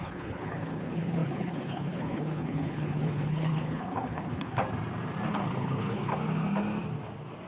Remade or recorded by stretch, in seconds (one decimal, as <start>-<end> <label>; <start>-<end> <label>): 0.0-4.6 remade; 4.6-5.3 recorded; 5.3-6.1 remade; 6.1-7.5 recorded